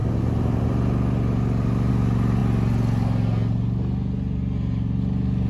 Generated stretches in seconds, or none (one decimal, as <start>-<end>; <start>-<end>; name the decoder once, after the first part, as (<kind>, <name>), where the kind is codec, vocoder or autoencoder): none